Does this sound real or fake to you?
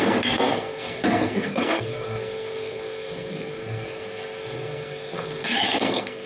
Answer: fake